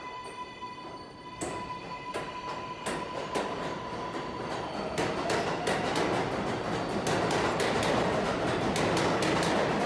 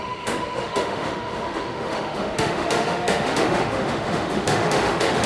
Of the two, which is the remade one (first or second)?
second